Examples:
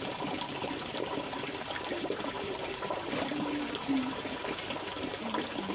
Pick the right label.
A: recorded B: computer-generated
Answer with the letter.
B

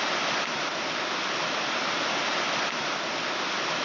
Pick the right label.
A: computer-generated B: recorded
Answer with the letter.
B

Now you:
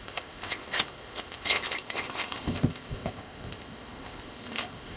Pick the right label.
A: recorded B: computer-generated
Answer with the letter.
B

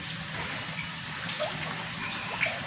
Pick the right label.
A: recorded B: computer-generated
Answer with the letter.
A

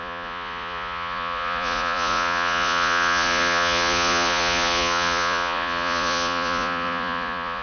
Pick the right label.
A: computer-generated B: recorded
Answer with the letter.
A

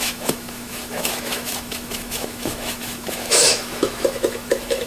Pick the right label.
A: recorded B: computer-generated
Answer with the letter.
B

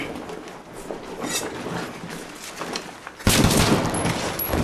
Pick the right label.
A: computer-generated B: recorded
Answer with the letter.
B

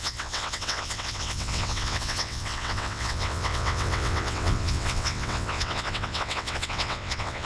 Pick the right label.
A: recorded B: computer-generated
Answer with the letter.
B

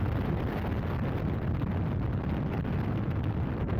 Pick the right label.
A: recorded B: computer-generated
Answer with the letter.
A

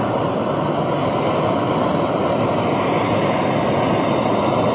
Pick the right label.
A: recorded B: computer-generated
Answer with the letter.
A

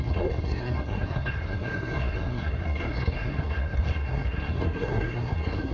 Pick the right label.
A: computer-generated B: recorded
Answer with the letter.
A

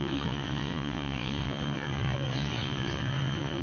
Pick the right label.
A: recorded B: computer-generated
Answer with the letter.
B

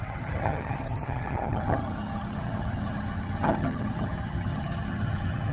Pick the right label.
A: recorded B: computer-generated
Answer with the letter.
B